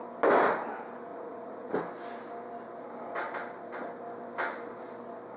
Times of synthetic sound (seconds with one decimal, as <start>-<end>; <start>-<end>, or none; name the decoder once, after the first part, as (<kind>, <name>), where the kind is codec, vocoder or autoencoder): 1.1-1.8 (vocoder, Vocos)